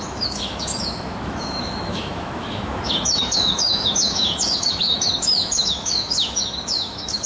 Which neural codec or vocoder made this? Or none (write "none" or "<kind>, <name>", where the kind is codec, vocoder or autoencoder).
autoencoder, DAC-VAE